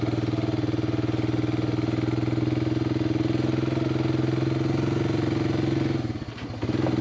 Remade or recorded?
recorded